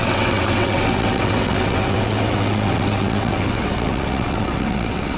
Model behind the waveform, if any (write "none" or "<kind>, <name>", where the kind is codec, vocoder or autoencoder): vocoder, WaveNeXt